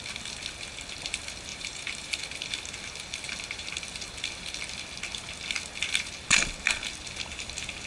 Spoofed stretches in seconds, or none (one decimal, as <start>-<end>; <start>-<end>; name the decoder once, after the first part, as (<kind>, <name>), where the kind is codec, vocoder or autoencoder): 1.5-2.2 (vocoder, BigVGAN v2)

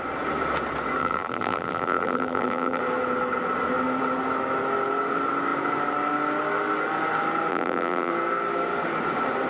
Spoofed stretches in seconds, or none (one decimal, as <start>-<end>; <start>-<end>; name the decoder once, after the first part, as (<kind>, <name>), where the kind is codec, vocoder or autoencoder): 1.0-2.8 (vocoder, BigVGAN v2); 7.5-8.1

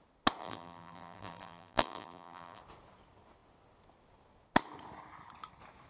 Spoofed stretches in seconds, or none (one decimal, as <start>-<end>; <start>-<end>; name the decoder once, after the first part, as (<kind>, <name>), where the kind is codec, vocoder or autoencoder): 0.4-2.6 (vocoder, BigVGAN v2)

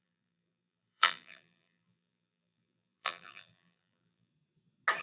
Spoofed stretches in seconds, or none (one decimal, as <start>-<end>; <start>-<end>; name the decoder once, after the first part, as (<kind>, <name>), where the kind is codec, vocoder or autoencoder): 0.0-4.3 (vocoder, BigVGAN v2)

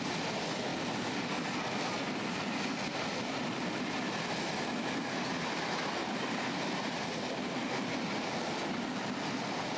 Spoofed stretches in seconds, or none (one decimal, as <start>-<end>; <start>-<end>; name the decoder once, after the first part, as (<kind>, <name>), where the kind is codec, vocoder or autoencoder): 0.7-2.2 (vocoder, BigVGAN v2); 6.0-7.2

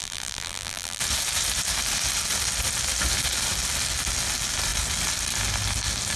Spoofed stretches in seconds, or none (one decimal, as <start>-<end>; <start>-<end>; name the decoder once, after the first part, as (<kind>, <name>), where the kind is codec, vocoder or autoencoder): 0.0-1.0 (vocoder, BigVGAN v2)